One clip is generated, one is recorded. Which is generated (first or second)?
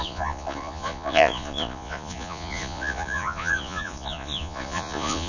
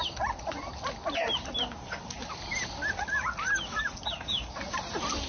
first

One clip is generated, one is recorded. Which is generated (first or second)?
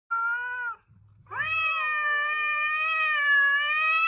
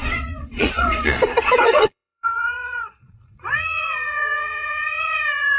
second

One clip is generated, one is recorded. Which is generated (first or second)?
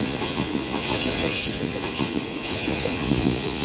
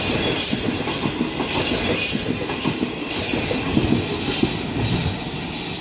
first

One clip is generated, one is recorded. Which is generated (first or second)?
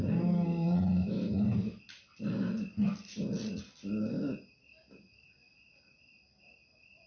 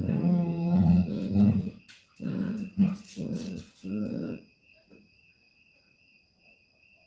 second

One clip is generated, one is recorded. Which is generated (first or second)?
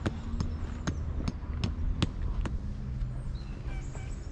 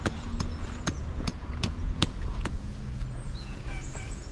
second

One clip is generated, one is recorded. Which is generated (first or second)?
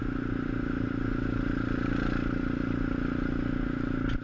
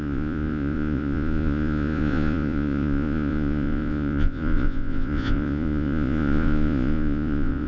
second